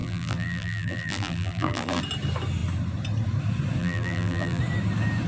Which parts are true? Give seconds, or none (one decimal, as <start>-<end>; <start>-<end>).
2.0-3.8; 4.6-5.3